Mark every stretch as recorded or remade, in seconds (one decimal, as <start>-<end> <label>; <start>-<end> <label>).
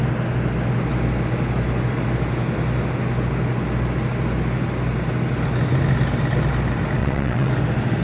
0.0-7.0 recorded; 7.0-7.5 remade; 7.5-8.0 recorded